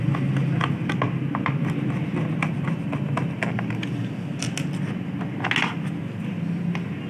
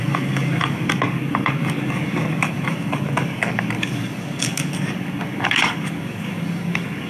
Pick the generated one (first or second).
second